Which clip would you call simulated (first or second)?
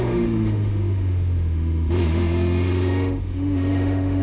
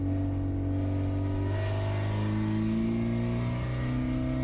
first